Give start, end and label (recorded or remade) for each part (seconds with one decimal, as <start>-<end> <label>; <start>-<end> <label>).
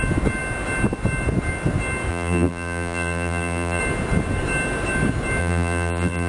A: 0.0-2.1 recorded; 2.1-3.8 remade; 3.8-5.4 recorded; 5.4-6.3 remade